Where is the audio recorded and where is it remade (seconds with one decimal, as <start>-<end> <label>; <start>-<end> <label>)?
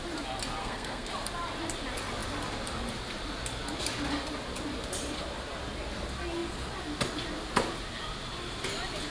0.0-0.6 recorded; 0.6-1.1 remade; 1.1-9.1 recorded